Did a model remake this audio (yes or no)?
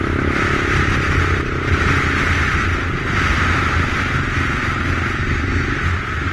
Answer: no